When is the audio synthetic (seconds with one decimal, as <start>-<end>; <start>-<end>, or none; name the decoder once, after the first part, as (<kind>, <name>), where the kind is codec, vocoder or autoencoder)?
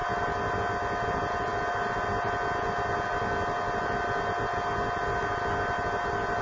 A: none